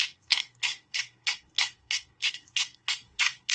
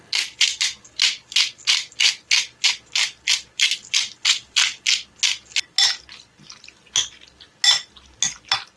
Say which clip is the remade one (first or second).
first